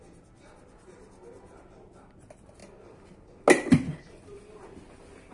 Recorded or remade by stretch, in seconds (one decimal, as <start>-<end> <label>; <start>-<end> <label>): 0.0-5.3 recorded